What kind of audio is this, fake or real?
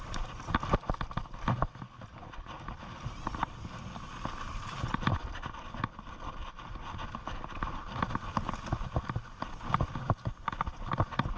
real